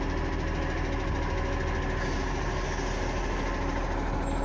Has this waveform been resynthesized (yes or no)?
no